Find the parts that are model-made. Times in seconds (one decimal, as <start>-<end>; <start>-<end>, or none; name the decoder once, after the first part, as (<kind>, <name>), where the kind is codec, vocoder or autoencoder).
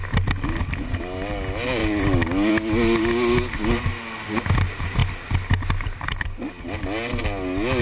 none